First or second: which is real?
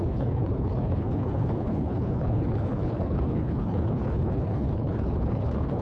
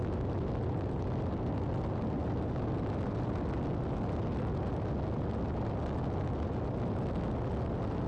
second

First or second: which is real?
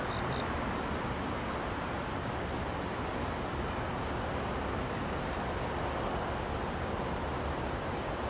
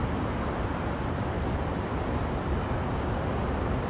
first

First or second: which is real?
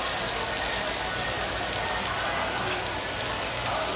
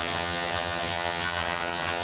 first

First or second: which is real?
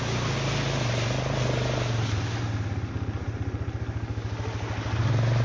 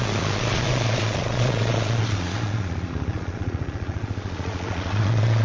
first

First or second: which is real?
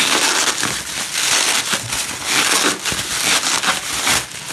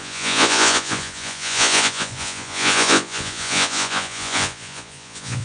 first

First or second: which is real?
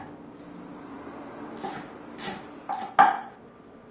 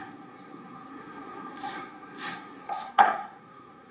first